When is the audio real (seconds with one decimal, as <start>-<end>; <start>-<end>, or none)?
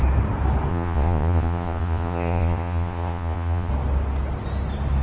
0.0-0.7; 3.7-5.0